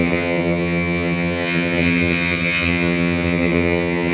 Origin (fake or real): fake